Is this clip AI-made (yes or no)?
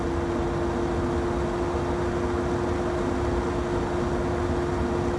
no